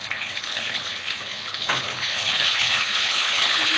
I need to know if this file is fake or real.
fake